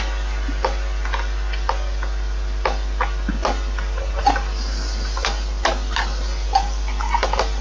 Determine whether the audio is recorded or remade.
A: recorded